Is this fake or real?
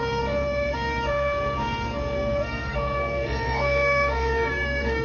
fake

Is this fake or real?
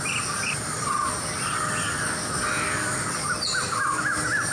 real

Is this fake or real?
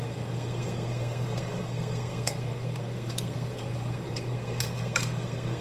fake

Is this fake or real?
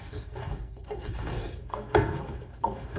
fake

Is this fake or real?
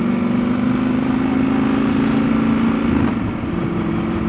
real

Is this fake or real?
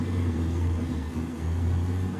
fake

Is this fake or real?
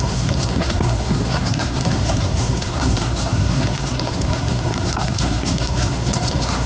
fake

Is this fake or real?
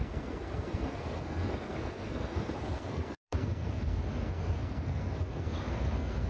fake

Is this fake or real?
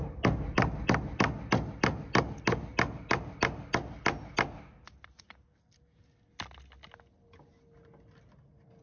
real